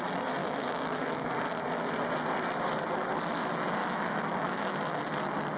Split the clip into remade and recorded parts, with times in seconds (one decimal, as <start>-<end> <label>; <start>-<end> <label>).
0.0-0.4 recorded; 0.4-1.3 remade; 1.3-3.8 recorded; 3.8-5.0 remade; 5.0-5.6 recorded